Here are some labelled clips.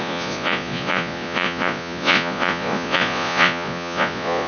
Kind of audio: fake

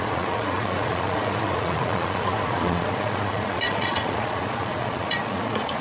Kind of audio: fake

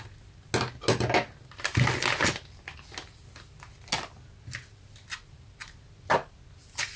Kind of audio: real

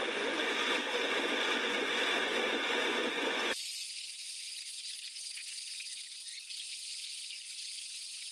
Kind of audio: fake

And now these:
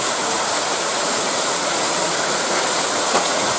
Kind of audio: fake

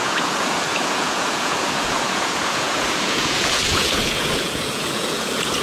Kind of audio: fake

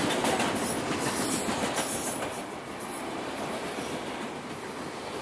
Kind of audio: real